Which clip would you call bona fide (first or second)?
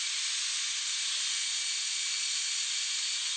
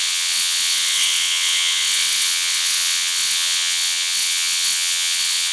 first